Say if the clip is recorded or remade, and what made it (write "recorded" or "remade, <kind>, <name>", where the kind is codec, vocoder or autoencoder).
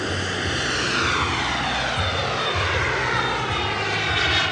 recorded